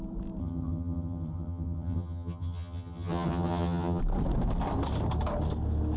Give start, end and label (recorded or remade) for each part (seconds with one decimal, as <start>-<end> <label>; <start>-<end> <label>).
0.0-0.4 recorded; 0.4-4.0 remade; 4.0-6.0 recorded